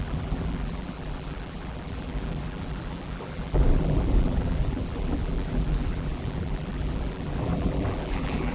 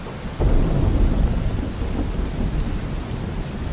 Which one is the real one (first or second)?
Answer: second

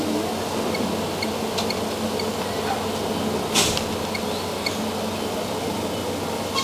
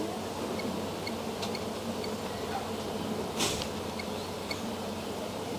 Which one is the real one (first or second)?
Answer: first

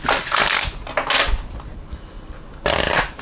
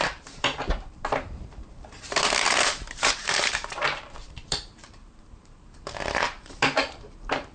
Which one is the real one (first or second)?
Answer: first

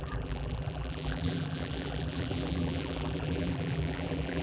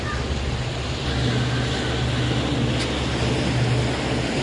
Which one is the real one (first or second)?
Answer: second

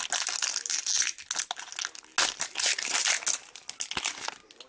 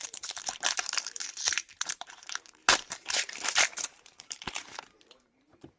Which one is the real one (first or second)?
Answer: first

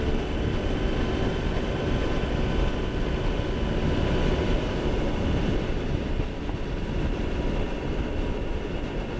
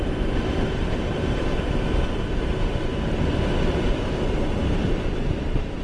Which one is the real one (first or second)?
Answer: first